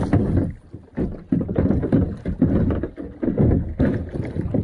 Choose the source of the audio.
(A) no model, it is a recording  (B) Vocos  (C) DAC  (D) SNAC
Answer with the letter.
A